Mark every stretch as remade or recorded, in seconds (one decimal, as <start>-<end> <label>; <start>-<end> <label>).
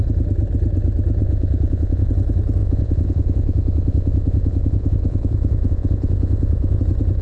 0.0-1.2 recorded; 1.2-2.1 remade; 2.1-2.6 recorded; 2.6-6.8 remade; 6.8-7.2 recorded